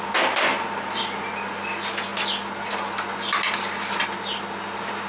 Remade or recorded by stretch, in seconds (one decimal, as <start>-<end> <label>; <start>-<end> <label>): 0.0-5.1 recorded